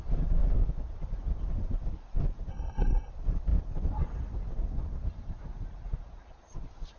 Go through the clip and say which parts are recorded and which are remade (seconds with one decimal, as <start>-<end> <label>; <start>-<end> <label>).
0.0-2.5 recorded; 2.5-3.1 remade; 3.1-7.0 recorded